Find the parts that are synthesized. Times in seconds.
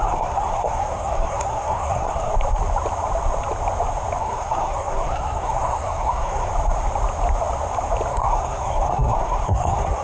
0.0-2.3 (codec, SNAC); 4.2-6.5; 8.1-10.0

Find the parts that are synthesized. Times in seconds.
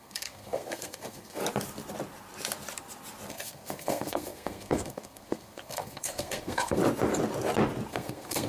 0.0-1.4 (codec, SNAC); 3.3-6.8; 7.9-8.5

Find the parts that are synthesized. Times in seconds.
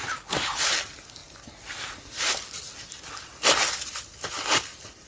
none